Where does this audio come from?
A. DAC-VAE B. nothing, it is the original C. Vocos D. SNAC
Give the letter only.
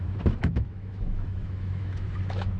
A